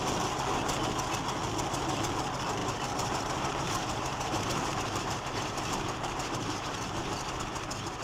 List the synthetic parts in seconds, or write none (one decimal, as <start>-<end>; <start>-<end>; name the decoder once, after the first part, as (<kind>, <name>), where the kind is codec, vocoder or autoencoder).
2.6-7.4 (vocoder, BigVGAN v2)